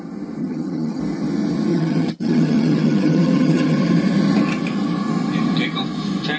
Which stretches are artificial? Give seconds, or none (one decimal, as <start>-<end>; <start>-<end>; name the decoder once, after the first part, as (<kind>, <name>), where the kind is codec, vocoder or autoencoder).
0.4-1.0 (vocoder, HiFi-GAN); 1.7-3.8